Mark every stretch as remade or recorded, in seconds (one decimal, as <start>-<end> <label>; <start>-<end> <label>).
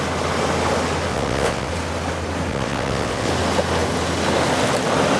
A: 0.0-1.1 recorded; 1.1-1.7 remade; 1.7-2.5 recorded; 2.5-3.3 remade; 3.3-5.2 recorded